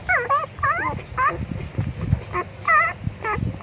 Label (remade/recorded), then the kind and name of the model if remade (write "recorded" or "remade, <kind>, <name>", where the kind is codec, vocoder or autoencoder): recorded